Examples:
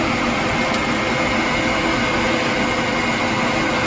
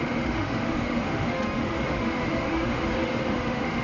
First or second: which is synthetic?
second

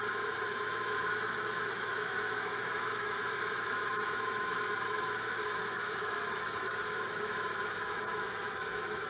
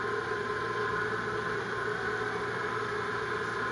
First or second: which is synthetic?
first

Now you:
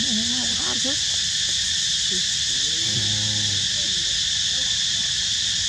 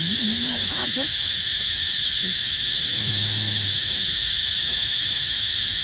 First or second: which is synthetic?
second